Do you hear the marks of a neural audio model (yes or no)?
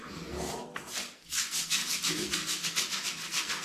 yes